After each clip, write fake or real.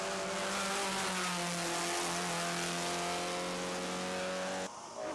real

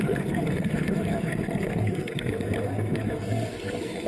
fake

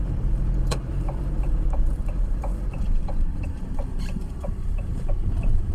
fake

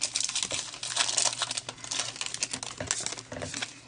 real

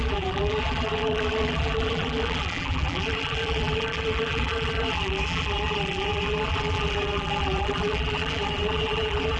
fake